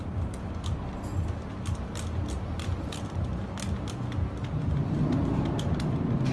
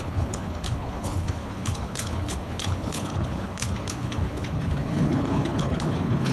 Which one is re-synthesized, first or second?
second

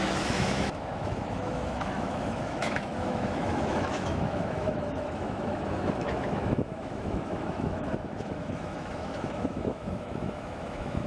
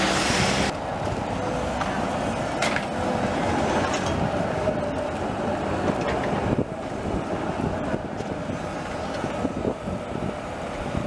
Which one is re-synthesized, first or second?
first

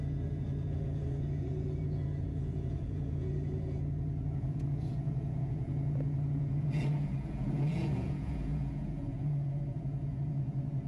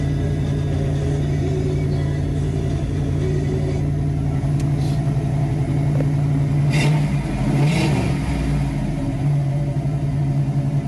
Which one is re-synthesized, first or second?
first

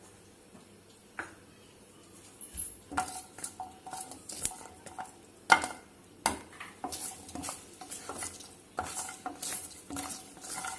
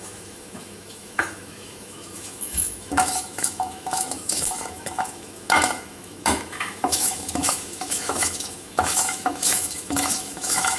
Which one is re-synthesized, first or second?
second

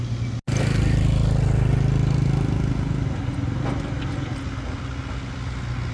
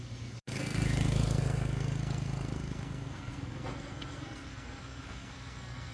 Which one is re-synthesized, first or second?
second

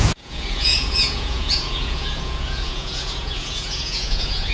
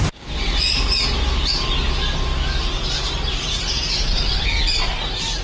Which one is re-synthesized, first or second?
first